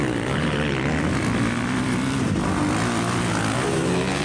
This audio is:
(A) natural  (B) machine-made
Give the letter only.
A